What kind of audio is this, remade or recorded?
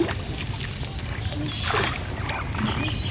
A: recorded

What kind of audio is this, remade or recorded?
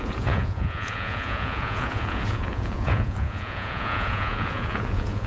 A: remade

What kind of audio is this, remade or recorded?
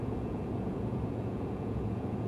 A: remade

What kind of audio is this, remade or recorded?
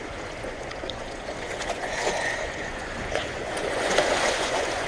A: remade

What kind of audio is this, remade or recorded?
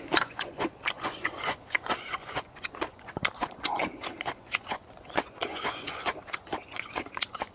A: remade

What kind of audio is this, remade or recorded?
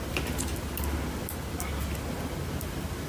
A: recorded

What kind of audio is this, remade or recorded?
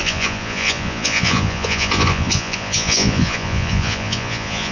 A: remade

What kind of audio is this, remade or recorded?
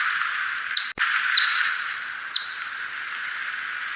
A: recorded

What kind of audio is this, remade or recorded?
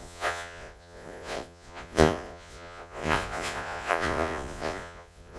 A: remade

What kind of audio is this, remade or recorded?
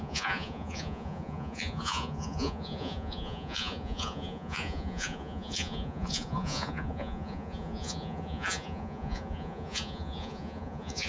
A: remade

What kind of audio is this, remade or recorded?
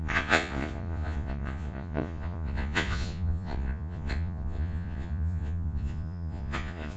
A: remade